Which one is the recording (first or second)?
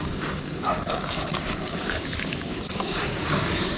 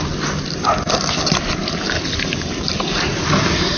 second